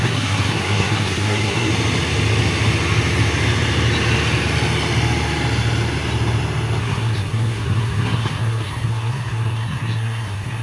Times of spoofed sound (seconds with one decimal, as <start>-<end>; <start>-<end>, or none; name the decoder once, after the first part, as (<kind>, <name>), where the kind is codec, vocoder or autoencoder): 0.0-1.7 (codec, SNAC); 6.8-10.6